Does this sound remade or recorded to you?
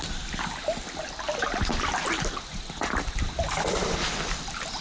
recorded